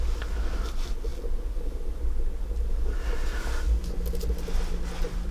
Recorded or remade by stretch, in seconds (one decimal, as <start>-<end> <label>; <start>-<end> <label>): 0.0-5.3 recorded